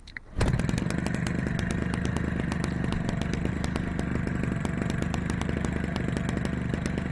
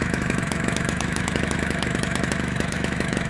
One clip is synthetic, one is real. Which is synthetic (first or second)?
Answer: second